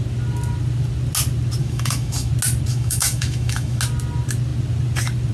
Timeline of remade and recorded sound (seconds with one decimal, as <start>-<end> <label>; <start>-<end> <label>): 0.0-1.6 recorded; 1.6-2.3 remade; 2.3-2.7 recorded; 2.7-3.8 remade; 3.8-5.3 recorded